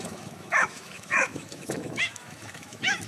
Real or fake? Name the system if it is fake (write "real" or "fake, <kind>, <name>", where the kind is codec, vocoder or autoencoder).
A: fake, autoencoder, DAC-VAE